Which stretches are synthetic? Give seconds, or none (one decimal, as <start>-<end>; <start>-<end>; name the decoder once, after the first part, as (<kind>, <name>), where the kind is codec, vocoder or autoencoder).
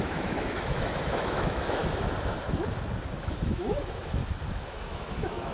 0.0-1.8 (autoencoder, DAC-VAE); 3.2-4.2; 4.7-5.5